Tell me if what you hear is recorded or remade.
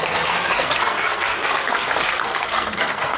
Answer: remade